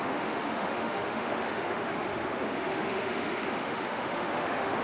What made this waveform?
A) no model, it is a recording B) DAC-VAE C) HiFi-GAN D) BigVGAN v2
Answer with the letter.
B